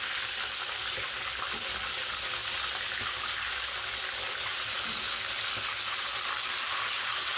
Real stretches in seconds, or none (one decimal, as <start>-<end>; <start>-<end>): 0.0-7.4